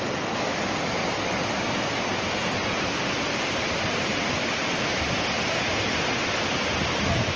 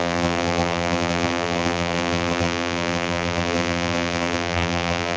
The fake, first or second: second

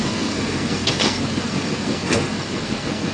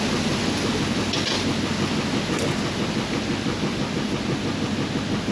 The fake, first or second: first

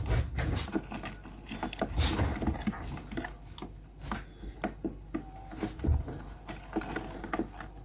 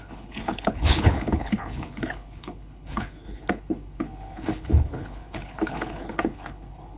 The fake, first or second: second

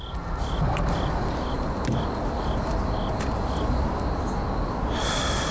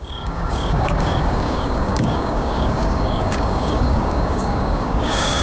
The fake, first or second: second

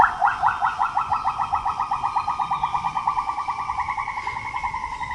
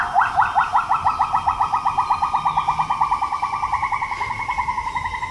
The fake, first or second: first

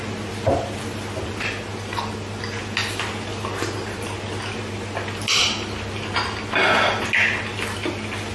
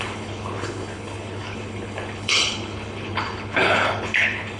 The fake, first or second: second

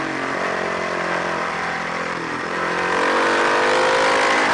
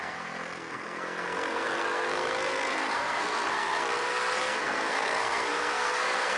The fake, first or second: second